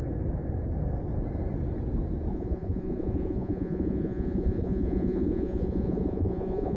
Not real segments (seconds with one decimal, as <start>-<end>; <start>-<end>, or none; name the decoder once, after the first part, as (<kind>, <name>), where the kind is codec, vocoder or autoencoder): 2.3-6.8 (vocoder, Vocos)